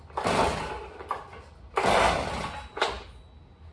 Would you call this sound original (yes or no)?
yes